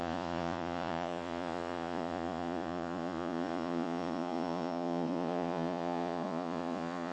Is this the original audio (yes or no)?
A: no